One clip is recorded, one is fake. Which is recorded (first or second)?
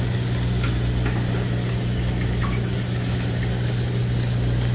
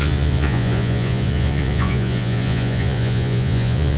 first